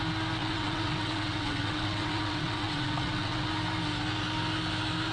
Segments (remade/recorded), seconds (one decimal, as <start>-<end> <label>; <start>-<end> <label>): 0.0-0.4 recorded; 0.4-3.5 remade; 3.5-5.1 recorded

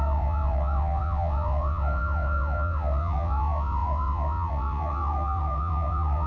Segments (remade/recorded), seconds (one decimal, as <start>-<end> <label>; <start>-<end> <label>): 0.0-6.3 remade

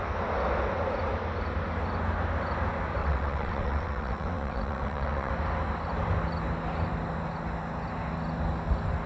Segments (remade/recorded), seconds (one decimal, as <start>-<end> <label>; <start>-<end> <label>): 0.0-3.0 recorded; 3.0-5.3 remade; 5.3-9.1 recorded

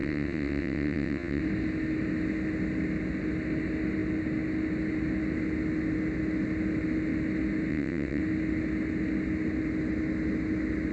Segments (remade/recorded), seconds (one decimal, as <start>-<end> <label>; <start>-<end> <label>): 0.0-1.4 remade; 1.4-7.7 recorded; 7.7-8.2 remade; 8.2-10.9 recorded

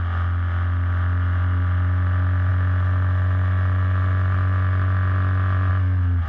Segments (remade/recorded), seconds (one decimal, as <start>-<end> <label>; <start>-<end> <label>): 0.0-6.3 recorded